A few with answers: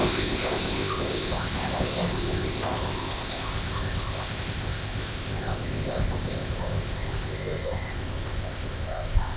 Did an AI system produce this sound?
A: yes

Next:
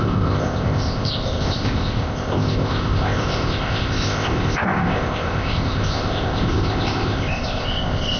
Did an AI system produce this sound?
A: yes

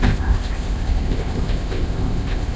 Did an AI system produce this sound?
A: yes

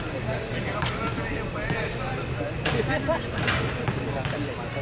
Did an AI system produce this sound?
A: no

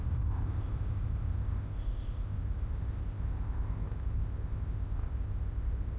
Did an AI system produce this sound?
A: yes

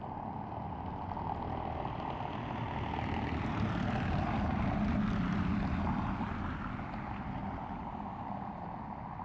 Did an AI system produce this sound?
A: no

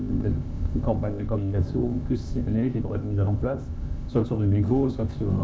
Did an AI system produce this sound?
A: yes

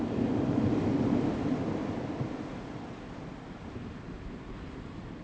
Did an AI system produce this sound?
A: no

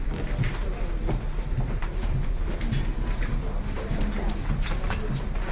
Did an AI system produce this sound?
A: no